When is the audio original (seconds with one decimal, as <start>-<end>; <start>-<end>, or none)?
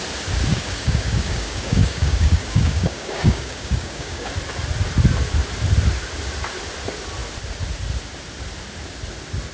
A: 0.0-0.5; 4.3-9.5